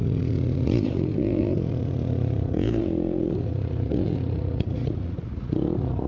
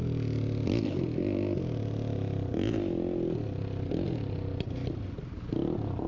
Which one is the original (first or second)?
second